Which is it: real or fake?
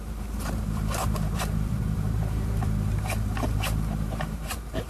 fake